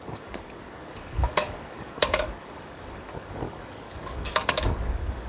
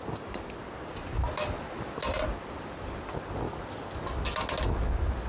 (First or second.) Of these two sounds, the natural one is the second